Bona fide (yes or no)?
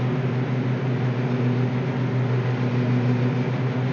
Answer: yes